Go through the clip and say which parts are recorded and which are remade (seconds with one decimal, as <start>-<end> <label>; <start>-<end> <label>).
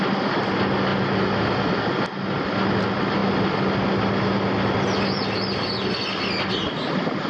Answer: 0.0-7.3 recorded